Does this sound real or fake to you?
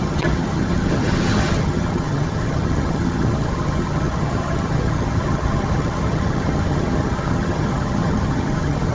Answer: fake